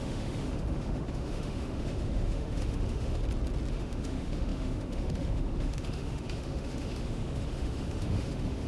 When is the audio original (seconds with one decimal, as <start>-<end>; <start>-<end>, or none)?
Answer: 3.2-3.7